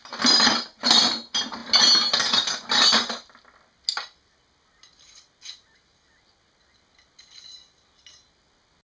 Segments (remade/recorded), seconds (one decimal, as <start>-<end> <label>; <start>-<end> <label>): 0.0-8.8 recorded